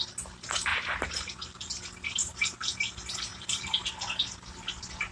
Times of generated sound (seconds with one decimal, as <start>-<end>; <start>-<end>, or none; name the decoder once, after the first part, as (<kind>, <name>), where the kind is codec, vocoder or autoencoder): 0.7-1.8 (vocoder, BigVGAN v2); 2.2-2.8; 3.3-3.9